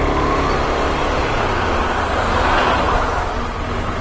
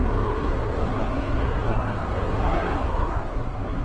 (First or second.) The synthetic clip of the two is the second